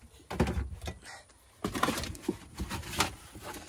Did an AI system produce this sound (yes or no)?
no